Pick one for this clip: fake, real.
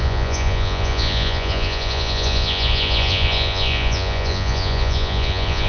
fake